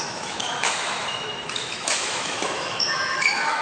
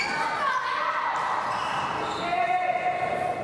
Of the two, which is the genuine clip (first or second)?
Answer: second